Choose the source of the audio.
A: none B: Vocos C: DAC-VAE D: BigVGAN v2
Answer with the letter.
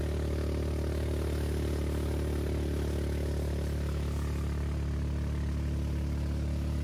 A